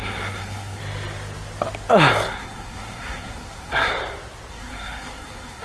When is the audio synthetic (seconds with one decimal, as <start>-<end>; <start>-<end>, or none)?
0.0-0.8; 2.3-3.9; 4.5-5.6